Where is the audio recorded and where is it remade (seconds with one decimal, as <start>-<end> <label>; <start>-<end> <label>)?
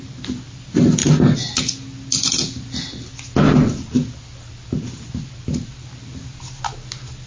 0.0-7.3 recorded